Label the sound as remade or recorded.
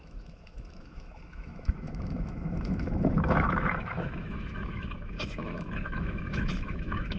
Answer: remade